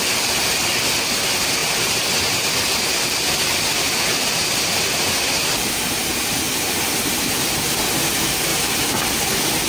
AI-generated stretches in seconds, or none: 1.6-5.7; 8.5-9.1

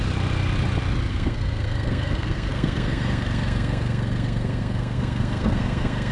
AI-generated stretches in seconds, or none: 1.1-6.1

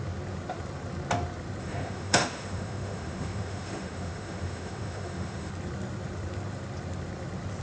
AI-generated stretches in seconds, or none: 1.6-5.5

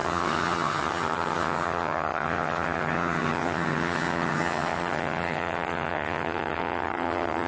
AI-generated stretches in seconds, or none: 0.0-7.5

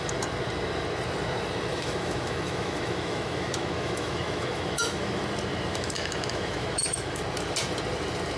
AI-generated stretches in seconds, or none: 1.7-5.2; 5.7-7.2

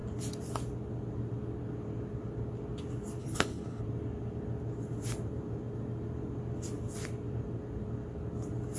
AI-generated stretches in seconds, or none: 3.2-3.8

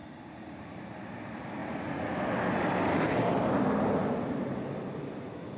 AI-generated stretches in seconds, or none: none